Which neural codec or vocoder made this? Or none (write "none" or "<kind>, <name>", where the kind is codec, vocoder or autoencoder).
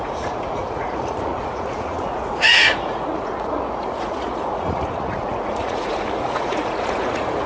vocoder, Vocos